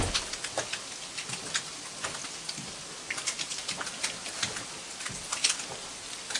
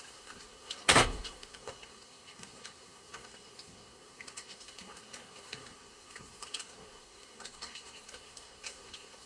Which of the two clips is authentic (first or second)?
first